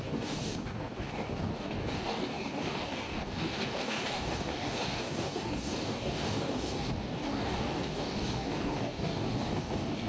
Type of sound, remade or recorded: remade